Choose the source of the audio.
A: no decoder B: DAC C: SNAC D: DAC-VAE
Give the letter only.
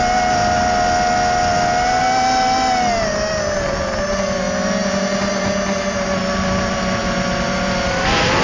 A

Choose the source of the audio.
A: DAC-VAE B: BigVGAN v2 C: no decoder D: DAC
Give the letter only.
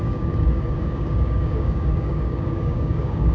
D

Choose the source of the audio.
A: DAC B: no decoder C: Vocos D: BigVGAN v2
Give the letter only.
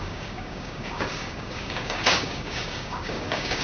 A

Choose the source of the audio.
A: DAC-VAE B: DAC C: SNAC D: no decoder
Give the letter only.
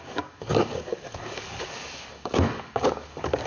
B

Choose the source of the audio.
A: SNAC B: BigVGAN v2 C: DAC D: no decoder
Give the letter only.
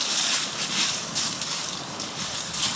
C